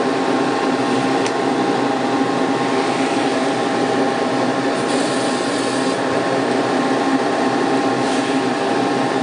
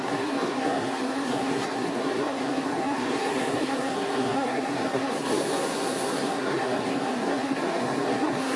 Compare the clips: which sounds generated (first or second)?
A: second